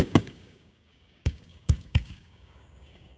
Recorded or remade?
remade